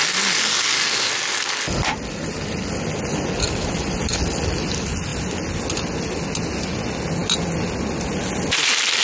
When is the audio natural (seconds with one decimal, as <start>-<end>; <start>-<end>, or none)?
0.0-9.0